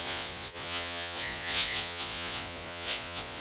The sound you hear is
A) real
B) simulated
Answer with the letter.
B